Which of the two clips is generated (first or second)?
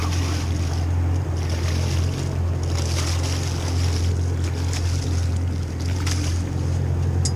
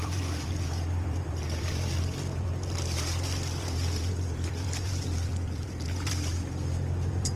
second